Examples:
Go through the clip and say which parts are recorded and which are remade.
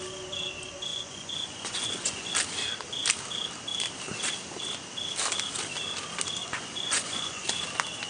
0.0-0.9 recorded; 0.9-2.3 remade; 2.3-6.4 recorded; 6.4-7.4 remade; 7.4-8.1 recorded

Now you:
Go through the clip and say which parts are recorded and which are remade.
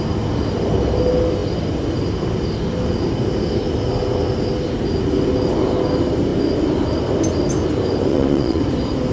0.0-8.1 recorded; 8.1-8.6 remade; 8.6-9.1 recorded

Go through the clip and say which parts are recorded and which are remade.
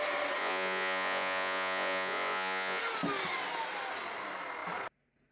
0.0-0.4 recorded; 0.4-2.8 remade; 2.8-5.3 recorded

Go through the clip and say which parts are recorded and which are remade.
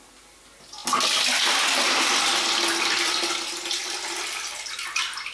0.0-5.3 recorded